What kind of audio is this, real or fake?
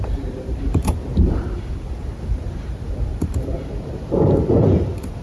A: fake